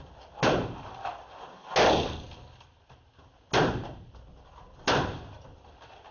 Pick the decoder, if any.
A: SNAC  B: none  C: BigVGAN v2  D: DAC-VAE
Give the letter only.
B